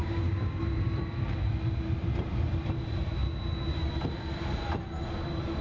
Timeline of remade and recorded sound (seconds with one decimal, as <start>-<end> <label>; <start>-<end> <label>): 0.0-0.6 remade; 0.6-5.6 recorded